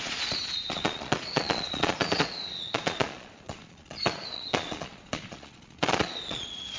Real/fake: fake